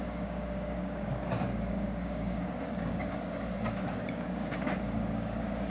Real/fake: fake